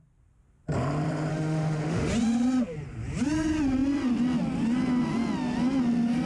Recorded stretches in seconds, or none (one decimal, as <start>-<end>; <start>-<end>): 0.0-1.3; 2.1-6.3